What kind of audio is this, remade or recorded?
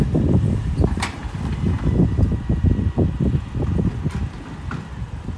recorded